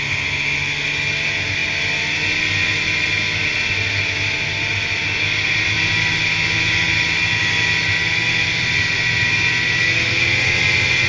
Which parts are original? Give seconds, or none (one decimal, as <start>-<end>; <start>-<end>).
0.0-11.1